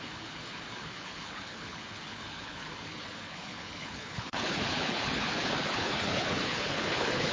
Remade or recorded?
remade